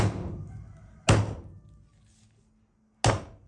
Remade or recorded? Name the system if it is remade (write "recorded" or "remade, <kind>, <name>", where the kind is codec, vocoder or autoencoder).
recorded